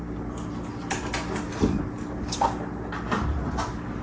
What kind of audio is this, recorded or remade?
recorded